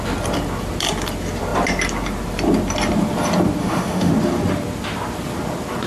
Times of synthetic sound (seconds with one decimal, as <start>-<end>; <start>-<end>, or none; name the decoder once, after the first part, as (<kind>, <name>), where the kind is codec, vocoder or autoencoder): 3.6-4.1 (autoencoder, DAC-VAE)